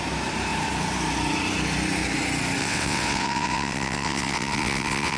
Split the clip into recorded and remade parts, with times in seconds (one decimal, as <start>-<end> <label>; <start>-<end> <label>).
0.0-2.6 recorded; 2.6-5.2 remade